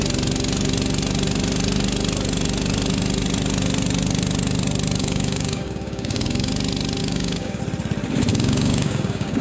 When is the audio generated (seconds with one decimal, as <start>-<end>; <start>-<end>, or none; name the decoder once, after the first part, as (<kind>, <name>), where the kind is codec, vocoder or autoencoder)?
5.0-6.5 (codec, DAC); 7.0-7.6; 8.3-9.4